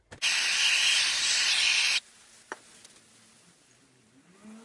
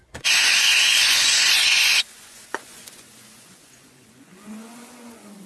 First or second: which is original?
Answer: first